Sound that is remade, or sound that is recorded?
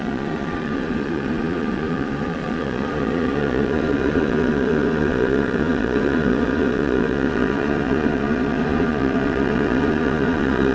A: remade